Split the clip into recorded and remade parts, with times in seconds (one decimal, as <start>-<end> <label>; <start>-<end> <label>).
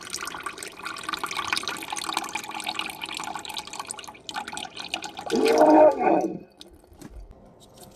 0.0-8.0 recorded